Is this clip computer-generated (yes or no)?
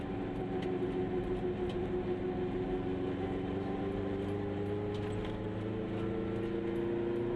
no